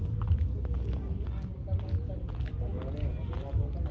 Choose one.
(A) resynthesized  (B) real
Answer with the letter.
B